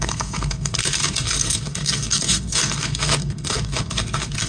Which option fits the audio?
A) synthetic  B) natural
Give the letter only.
A